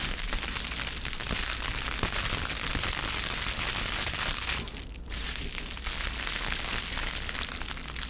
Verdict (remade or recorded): recorded